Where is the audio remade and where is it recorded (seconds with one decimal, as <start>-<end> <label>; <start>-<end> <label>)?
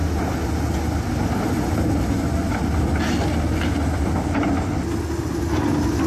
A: 0.0-6.1 recorded